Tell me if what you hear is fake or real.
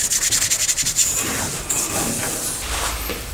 real